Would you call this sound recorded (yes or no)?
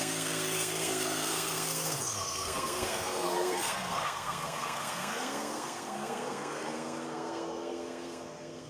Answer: no